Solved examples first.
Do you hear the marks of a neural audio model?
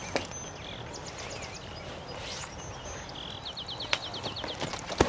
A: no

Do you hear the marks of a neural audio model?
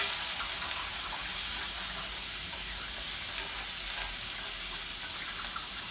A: no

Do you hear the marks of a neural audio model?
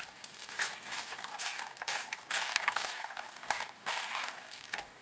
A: yes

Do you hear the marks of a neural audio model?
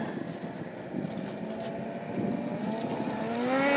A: no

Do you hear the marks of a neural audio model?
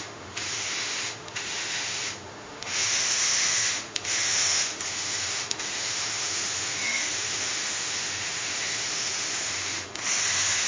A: yes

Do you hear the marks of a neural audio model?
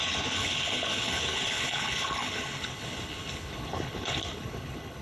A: yes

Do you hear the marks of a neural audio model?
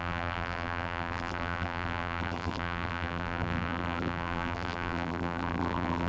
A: yes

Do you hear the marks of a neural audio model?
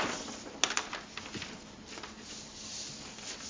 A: no